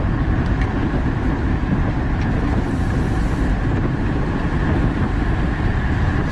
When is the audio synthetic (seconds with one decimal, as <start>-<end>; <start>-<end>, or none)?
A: none